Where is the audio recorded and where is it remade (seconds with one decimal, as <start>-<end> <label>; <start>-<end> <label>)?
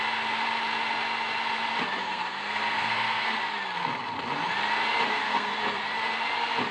0.0-2.0 recorded; 2.0-3.3 remade; 3.3-5.1 recorded; 5.1-5.8 remade; 5.8-6.7 recorded